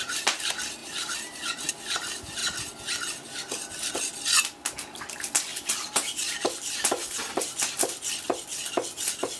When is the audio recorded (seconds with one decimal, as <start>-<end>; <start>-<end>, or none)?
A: 0.0-0.8; 1.7-5.5; 7.6-9.4